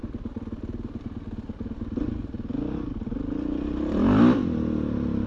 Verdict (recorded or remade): recorded